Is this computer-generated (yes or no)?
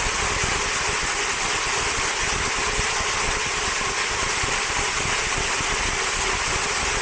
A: no